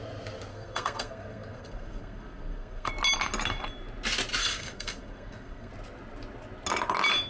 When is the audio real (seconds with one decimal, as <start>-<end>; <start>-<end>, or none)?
0.0-0.5; 2.9-4.4; 5.7-7.3